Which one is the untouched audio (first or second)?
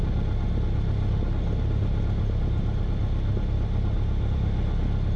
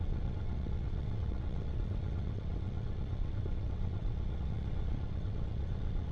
first